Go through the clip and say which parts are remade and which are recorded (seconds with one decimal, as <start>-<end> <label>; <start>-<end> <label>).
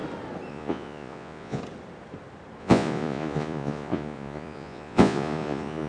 0.0-0.5 recorded; 0.5-1.6 remade; 1.6-2.6 recorded; 2.6-5.9 remade